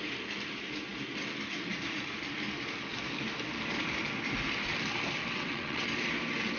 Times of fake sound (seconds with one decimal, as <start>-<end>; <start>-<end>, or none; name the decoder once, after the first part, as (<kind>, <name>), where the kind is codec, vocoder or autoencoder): 5.2-5.9 (vocoder, WaveNeXt)